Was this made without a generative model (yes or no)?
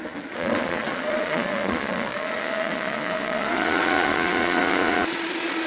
no